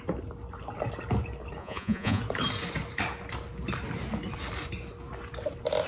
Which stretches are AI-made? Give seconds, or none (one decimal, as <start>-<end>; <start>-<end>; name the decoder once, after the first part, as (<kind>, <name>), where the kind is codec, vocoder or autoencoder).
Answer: 1.6-2.2 (vocoder, Vocos)